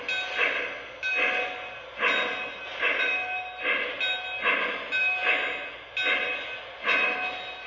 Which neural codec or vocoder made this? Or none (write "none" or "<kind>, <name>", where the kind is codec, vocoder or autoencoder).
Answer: none